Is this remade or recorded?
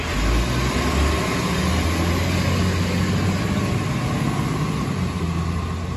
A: recorded